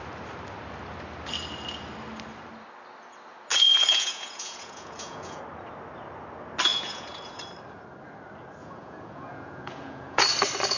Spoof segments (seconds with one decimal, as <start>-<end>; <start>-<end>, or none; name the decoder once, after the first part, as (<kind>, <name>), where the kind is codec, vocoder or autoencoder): 3.5-5.4 (vocoder, Vocos); 6.7-7.4; 8.6-10.2